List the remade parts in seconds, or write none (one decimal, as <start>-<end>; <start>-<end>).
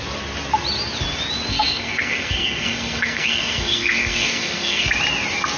1.5-4.9